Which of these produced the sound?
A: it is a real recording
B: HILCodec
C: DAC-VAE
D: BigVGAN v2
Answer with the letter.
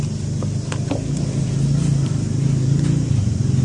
D